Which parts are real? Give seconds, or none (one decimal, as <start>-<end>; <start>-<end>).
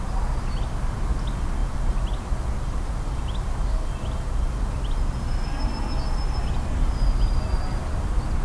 0.0-8.4